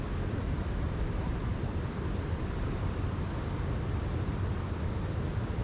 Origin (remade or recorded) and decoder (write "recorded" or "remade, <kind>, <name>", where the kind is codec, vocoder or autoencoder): recorded